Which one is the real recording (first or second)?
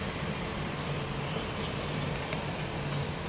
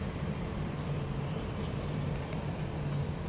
first